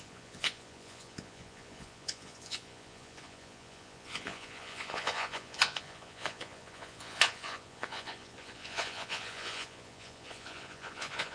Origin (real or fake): fake